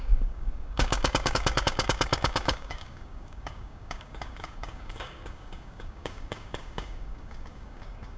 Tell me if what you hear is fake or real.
fake